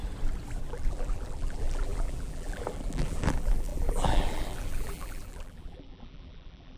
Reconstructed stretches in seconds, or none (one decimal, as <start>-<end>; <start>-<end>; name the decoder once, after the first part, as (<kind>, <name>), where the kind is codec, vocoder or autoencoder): 0.6-6.8 (vocoder, BigVGAN v2)